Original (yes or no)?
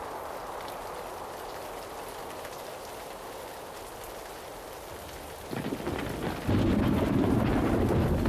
yes